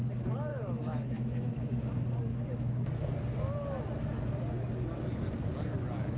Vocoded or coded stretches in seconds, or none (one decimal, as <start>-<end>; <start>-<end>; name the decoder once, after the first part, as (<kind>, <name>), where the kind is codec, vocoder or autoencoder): 0.5-1.8 (autoencoder, DAC-VAE); 2.3-3.1